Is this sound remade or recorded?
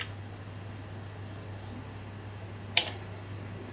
recorded